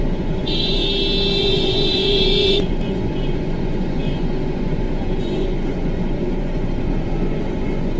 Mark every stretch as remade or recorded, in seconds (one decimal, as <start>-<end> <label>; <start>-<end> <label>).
0.0-0.8 remade; 0.8-1.4 recorded; 1.4-8.0 remade